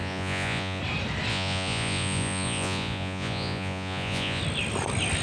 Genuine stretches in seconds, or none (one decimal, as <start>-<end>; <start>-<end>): 0.8-1.3; 4.4-5.2